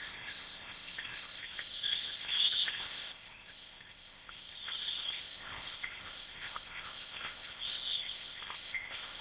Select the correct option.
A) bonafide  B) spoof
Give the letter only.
B